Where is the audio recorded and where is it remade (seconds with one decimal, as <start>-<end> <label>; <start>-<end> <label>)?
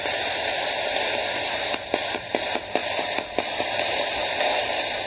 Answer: 0.0-1.2 recorded; 1.2-1.7 remade; 1.7-5.1 recorded